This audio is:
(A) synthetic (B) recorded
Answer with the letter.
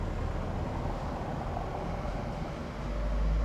B